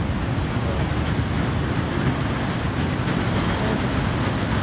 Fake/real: real